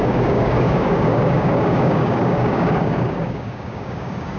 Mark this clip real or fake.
fake